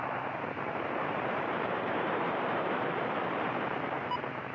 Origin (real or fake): fake